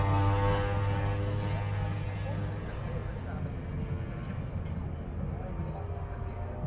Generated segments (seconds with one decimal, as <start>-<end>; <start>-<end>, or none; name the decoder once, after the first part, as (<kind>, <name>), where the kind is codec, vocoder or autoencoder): none